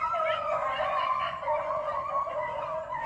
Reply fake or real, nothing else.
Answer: fake